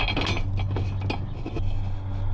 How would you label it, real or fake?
real